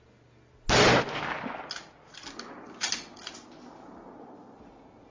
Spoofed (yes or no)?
no